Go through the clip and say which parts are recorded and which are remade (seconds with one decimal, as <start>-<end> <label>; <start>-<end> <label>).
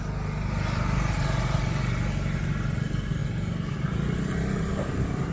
0.0-5.3 recorded